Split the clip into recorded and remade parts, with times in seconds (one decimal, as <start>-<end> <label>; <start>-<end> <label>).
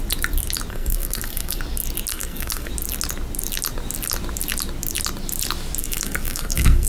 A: 0.0-0.7 recorded; 0.7-1.6 remade; 1.6-2.1 recorded; 2.1-2.7 remade; 2.7-5.8 recorded; 5.8-6.9 remade